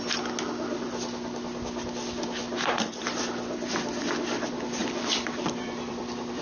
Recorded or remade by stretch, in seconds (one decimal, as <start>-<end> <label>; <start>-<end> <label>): 0.0-2.4 recorded; 2.4-4.0 remade; 4.0-4.8 recorded; 4.8-6.4 remade